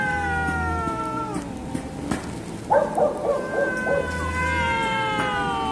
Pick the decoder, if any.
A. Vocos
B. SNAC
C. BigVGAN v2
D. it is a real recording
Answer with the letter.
D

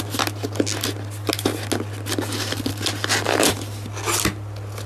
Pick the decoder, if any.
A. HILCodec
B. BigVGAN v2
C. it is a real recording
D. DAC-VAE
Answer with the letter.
C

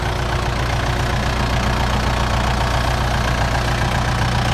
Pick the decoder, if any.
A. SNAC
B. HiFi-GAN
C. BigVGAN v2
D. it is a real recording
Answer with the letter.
D